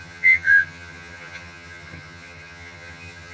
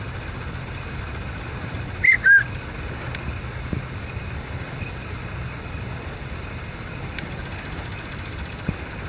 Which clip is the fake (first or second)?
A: first